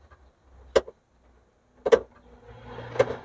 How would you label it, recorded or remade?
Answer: recorded